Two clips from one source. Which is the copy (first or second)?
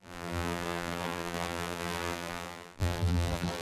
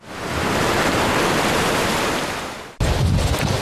first